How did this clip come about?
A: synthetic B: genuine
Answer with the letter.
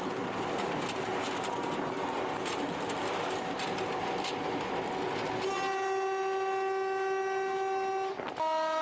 B